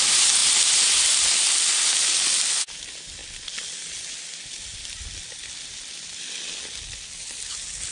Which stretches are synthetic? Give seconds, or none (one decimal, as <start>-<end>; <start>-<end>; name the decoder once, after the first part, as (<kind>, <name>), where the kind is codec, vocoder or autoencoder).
none